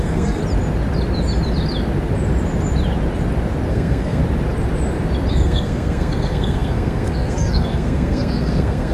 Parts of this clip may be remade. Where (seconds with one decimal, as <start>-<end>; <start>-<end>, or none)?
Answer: 0.0-0.4; 3.7-4.2; 5.3-8.9